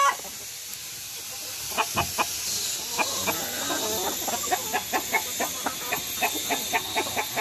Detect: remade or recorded recorded